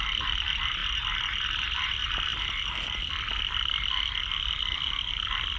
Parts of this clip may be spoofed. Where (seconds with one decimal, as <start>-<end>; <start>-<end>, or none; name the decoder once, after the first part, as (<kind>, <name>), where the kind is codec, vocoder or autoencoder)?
none